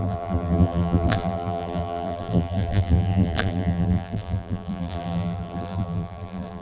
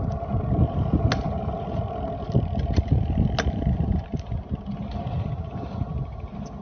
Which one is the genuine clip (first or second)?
second